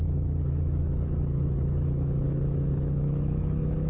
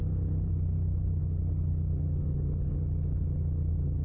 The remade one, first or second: first